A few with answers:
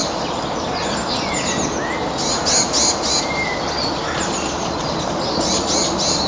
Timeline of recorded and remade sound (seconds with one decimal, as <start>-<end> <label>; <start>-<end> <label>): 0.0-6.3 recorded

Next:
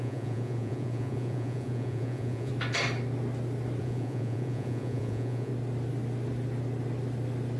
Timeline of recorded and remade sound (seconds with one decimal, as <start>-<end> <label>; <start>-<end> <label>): 0.0-2.5 remade; 2.5-3.8 recorded; 3.8-5.5 remade; 5.5-7.6 recorded

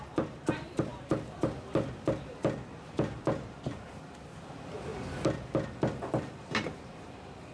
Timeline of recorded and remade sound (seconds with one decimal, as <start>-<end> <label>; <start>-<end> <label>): 0.0-0.9 remade; 0.9-4.0 recorded; 4.0-4.9 remade; 4.9-6.1 recorded; 6.1-7.5 remade

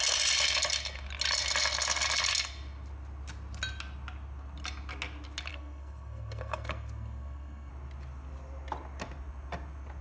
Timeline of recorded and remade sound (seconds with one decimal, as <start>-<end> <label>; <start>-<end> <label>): 0.0-5.5 recorded; 5.5-7.7 remade; 7.7-10.0 recorded